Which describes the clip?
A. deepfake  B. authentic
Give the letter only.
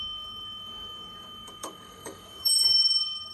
A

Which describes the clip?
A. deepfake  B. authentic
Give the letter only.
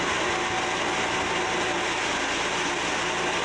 B